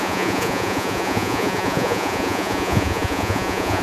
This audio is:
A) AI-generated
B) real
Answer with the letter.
A